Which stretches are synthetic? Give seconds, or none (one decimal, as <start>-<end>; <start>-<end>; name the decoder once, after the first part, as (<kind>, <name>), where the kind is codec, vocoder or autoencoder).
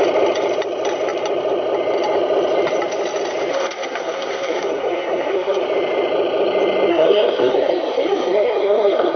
3.5-5.6 (codec, SNAC); 6.9-9.2